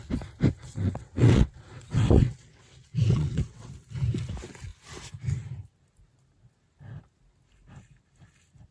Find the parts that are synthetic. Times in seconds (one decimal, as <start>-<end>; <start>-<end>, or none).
0.6-3.7